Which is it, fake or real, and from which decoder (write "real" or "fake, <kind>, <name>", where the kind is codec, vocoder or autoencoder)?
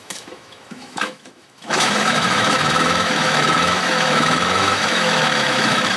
fake, autoencoder, DAC-VAE